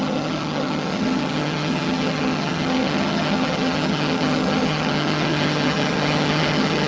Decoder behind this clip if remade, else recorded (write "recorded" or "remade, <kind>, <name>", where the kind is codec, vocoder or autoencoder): remade, vocoder, HiFi-GAN